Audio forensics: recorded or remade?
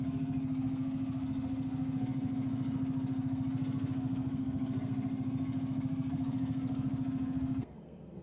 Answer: remade